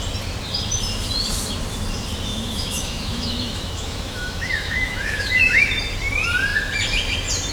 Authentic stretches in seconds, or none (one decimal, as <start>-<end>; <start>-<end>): 0.0-2.3; 5.8-7.5